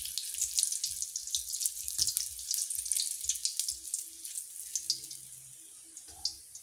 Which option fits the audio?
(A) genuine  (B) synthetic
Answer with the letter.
A